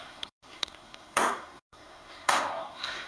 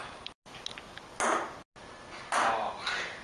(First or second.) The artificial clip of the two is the first